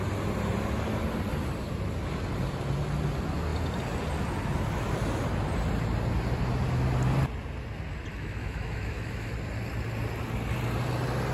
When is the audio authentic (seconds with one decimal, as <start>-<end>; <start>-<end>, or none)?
0.0-8.1; 9.3-11.3